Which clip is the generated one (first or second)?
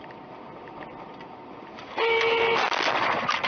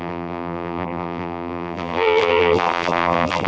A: second